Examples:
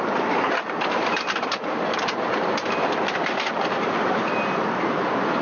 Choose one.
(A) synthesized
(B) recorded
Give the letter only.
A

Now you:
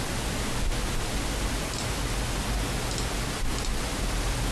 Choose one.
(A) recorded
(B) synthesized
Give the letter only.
A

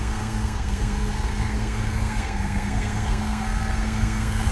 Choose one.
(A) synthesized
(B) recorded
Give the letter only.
A